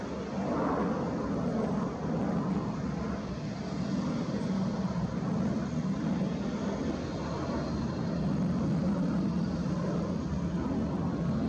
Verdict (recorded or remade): recorded